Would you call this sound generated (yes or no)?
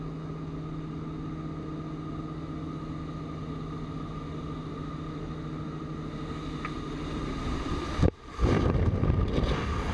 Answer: no